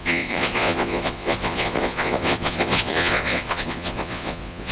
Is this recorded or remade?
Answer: remade